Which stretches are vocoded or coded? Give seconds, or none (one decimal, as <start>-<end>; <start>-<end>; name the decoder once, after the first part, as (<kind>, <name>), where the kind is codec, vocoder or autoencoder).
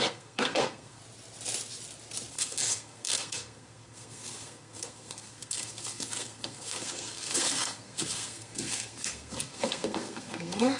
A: 0.0-1.0 (codec, SNAC); 2.3-10.8